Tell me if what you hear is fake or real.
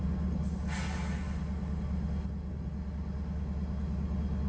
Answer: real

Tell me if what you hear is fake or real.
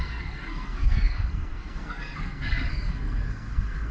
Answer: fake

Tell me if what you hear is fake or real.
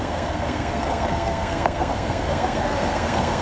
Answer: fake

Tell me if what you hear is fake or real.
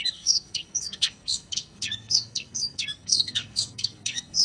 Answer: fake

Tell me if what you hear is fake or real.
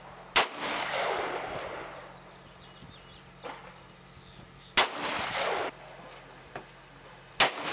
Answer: real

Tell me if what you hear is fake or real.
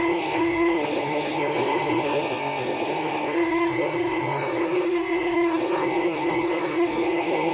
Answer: fake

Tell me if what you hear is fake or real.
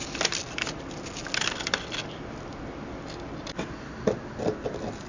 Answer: real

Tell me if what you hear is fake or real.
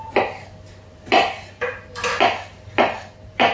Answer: real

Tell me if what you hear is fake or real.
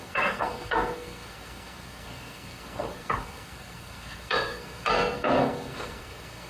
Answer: fake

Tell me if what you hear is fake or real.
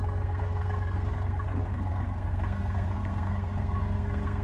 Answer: fake